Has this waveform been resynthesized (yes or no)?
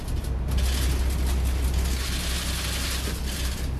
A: no